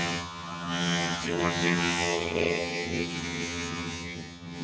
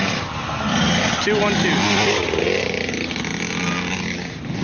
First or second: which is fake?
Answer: first